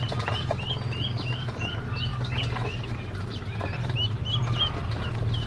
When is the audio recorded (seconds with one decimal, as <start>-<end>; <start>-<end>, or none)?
0.0-2.1; 2.9-5.5